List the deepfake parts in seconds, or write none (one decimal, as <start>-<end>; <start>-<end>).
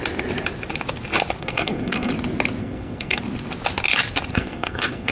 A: 1.4-2.1; 2.6-3.2; 4.3-5.1